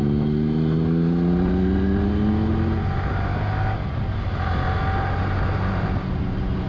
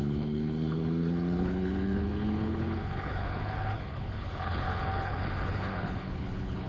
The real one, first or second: first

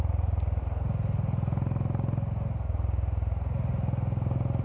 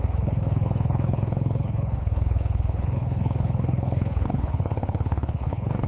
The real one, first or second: first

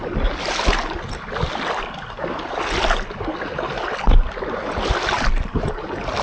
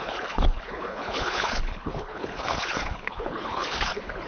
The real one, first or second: first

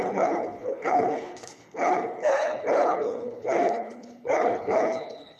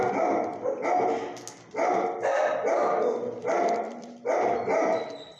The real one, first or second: second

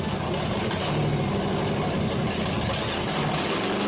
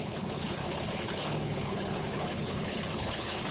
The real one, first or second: first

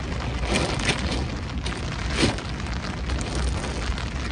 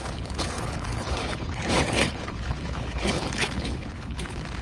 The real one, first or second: first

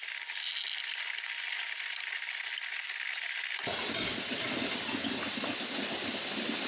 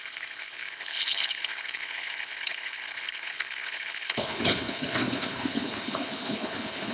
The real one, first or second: first